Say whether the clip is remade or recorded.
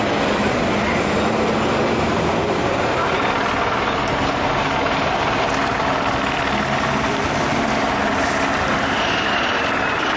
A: recorded